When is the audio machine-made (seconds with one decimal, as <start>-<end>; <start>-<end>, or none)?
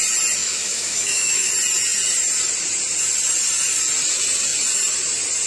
0.4-1.5